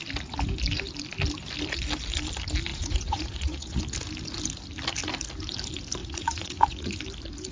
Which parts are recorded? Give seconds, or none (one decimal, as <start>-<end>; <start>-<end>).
0.0-2.7; 3.8-6.0; 7.0-7.5